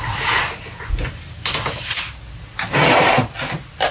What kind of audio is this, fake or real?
real